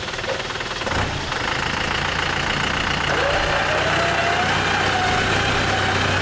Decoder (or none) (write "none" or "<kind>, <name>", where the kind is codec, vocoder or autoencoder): none